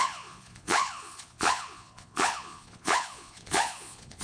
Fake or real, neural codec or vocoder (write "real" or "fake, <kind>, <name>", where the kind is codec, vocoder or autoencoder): fake, vocoder, Vocos